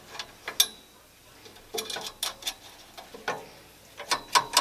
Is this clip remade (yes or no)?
no